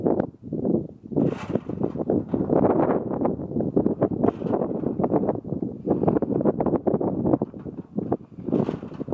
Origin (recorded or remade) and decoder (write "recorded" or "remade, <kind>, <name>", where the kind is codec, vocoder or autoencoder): recorded